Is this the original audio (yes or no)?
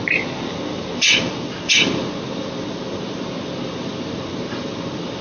yes